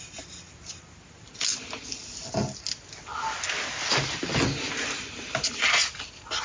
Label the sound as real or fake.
real